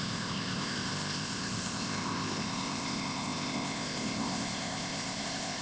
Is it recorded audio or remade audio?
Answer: remade